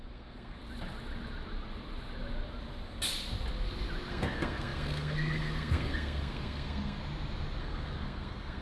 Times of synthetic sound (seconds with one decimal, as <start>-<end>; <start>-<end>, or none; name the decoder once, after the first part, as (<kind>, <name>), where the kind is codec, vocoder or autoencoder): 0.0-0.6 (codec, SNAC); 4.1-7.0; 7.6-8.6